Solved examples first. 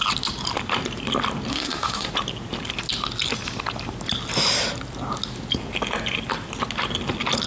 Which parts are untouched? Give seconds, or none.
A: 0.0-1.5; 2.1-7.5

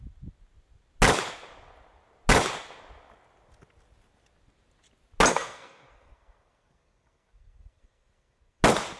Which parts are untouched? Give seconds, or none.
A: 0.0-5.3; 8.6-9.0

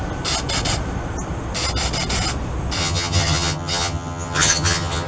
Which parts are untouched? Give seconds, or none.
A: 0.0-2.8

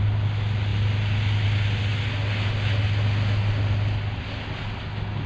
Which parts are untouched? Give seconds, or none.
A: 0.0-5.3

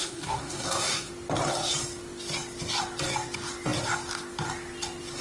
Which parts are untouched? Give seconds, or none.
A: 1.1-5.2

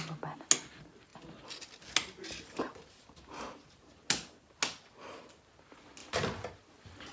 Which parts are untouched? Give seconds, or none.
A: 0.0-7.1

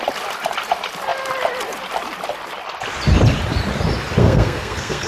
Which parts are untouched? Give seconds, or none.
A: 0.0-4.2

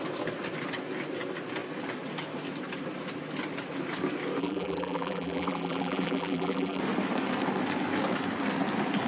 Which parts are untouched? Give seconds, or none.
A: 0.0-4.4; 6.8-9.1